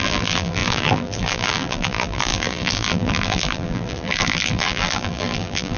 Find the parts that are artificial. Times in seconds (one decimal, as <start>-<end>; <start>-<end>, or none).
0.0-5.8